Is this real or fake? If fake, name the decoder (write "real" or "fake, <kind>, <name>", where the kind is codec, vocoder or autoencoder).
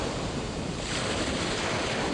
real